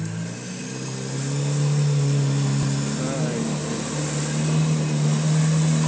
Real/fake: real